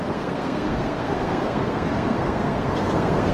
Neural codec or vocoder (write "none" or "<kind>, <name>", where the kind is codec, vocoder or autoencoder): codec, SNAC